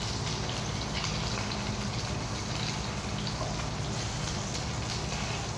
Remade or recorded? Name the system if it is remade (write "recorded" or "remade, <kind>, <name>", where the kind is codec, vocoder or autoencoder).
recorded